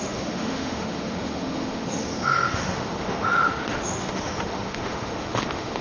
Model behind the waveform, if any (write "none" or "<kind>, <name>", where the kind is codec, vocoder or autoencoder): autoencoder, DAC-VAE